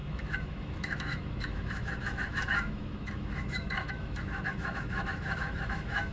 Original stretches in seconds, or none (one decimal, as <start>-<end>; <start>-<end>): none